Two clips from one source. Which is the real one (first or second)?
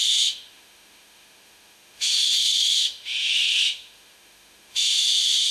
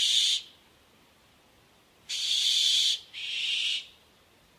second